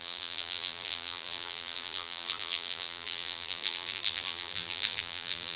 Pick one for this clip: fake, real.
fake